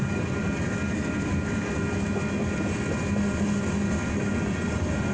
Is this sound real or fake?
real